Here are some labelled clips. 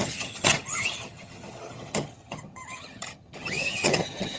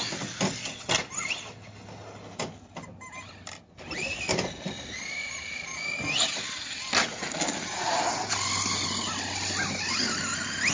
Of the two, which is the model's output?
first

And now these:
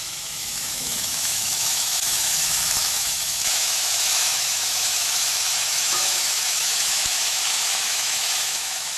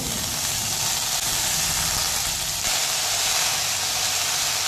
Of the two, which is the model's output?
first